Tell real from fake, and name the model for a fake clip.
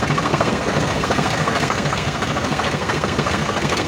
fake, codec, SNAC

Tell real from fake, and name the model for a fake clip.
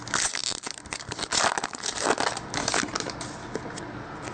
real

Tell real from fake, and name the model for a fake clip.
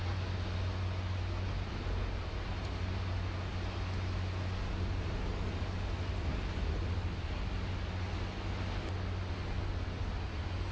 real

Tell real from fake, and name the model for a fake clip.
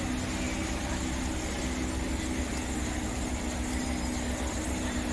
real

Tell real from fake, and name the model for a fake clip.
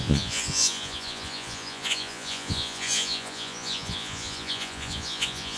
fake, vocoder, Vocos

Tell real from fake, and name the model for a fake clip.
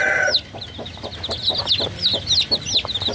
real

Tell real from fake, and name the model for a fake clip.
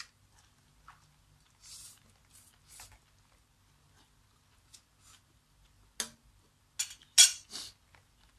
real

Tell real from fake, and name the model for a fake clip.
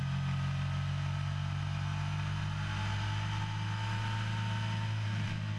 real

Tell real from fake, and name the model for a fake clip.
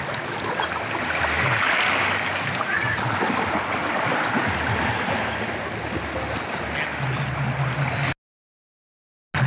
real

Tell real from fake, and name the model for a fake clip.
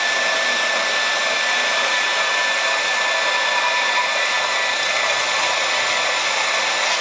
real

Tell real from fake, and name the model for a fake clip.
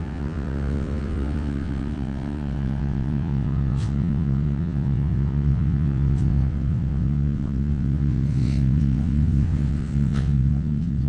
fake, vocoder, WaveNeXt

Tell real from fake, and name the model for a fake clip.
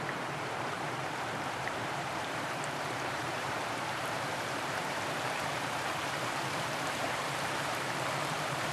fake, vocoder, BigVGAN v2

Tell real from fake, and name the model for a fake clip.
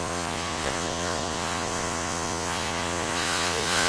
fake, vocoder, Vocos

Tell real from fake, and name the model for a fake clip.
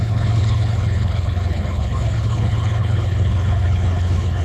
fake, codec, HILCodec